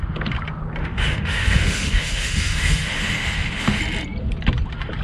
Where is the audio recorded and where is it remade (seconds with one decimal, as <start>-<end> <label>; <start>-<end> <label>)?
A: 0.0-0.8 recorded; 0.8-3.8 remade; 3.8-5.0 recorded